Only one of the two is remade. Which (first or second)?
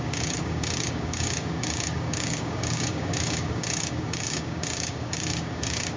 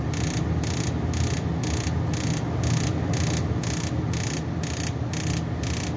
first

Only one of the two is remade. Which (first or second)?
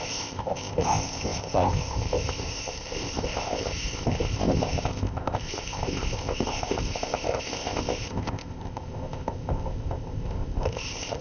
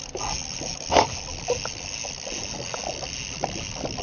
first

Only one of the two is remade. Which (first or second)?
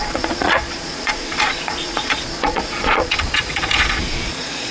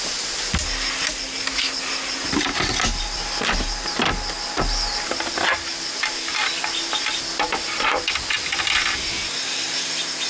first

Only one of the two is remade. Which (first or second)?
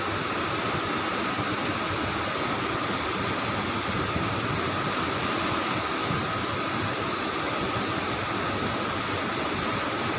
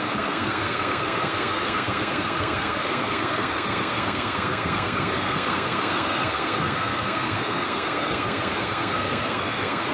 second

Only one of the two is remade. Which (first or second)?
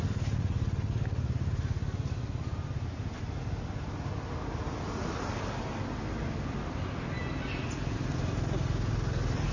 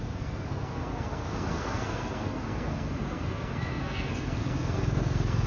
second